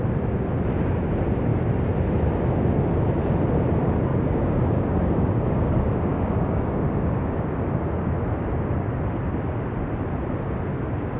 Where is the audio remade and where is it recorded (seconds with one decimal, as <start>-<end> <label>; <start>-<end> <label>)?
0.0-4.1 recorded; 4.1-7.6 remade; 7.6-11.2 recorded